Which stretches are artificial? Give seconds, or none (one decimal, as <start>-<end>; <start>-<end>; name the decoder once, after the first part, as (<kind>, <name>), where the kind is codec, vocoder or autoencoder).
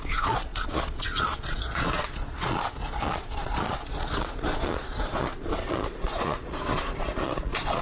0.0-7.8 (vocoder, Vocos)